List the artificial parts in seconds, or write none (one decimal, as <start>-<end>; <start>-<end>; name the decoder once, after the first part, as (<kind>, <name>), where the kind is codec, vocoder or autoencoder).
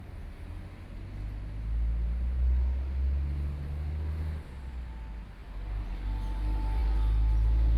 none